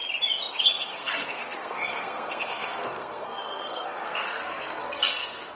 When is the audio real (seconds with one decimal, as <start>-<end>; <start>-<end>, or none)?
0.0-0.6